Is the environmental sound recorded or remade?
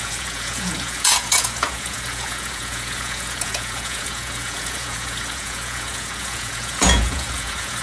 remade